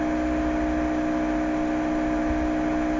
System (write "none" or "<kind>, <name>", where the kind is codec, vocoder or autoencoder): none